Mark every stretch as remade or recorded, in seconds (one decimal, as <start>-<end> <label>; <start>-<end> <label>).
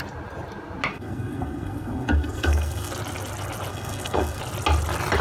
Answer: 0.0-0.9 recorded; 0.9-2.9 remade; 2.9-3.7 recorded; 3.7-4.4 remade; 4.4-5.2 recorded